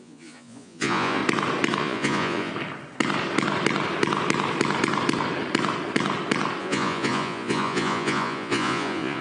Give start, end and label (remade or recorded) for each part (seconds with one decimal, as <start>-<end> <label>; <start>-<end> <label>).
0.0-1.2 remade; 1.2-1.8 recorded; 1.8-2.5 remade; 2.5-6.6 recorded; 6.6-9.2 remade